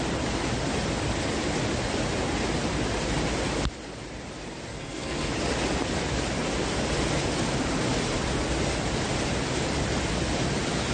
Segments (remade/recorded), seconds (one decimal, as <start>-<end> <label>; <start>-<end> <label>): 0.0-4.7 recorded; 4.7-5.3 remade; 5.3-10.9 recorded